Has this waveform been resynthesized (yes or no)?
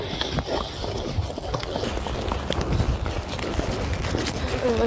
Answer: no